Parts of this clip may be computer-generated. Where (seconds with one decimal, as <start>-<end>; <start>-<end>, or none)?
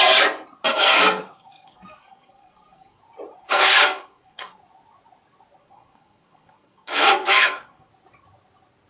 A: 0.7-3.0; 3.4-4.6; 5.6-7.9